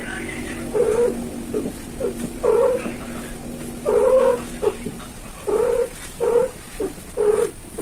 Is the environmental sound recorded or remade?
recorded